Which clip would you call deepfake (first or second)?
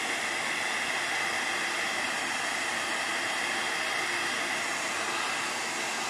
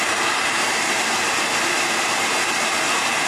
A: second